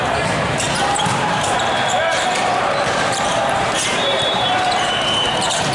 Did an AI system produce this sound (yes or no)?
yes